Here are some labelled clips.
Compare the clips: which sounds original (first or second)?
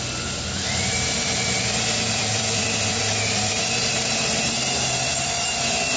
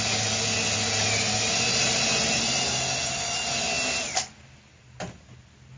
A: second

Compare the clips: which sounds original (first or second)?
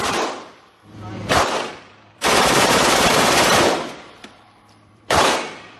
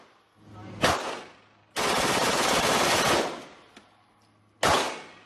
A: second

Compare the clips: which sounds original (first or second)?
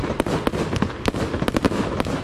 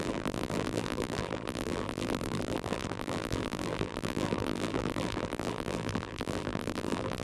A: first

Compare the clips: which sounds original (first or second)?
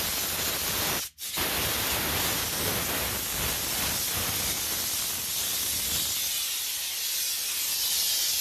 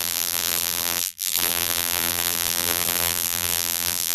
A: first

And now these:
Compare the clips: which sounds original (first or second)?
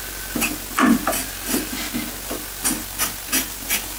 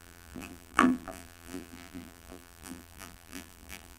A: first